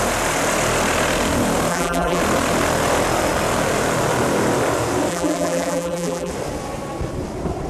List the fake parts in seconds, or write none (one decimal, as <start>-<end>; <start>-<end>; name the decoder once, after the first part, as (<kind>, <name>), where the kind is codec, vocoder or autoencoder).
1.7-2.2 (vocoder, BigVGAN v2); 5.1-6.3